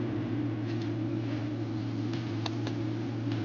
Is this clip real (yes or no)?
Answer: yes